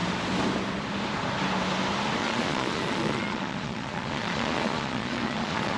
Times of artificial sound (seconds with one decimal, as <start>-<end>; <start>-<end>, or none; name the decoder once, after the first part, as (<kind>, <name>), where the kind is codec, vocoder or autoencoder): 2.2-5.8 (vocoder, Vocos)

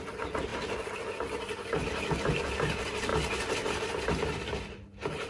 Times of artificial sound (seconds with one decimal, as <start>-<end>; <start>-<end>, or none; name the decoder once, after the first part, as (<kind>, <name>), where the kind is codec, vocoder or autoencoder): none

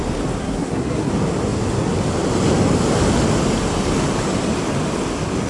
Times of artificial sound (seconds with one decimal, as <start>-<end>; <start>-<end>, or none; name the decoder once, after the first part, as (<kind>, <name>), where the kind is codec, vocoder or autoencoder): 0.4-1.1 (codec, SNAC)

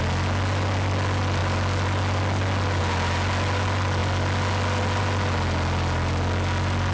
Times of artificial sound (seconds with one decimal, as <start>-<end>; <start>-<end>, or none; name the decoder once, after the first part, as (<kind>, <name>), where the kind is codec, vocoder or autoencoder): none

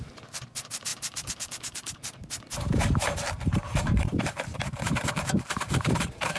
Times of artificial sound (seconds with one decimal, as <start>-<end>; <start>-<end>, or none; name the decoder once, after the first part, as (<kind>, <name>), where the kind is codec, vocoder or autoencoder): 0.0-4.5 (vocoder, BigVGAN v2); 5.1-6.4